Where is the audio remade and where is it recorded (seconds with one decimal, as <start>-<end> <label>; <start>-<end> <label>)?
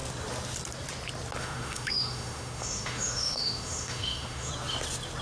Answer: 0.0-1.4 recorded; 1.4-4.5 remade; 4.5-5.2 recorded